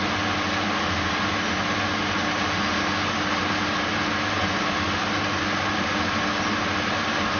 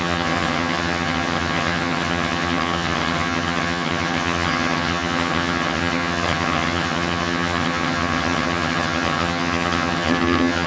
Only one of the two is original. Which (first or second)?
first